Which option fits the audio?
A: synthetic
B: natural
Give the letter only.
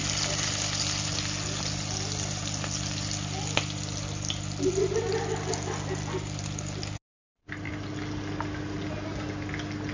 B